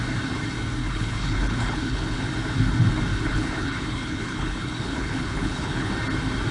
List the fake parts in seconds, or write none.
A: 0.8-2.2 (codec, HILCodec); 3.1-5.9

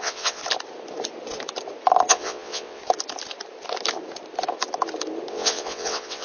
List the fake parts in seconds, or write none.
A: 0.0-0.4 (vocoder, WaveNeXt); 2.1-2.8; 5.3-6.2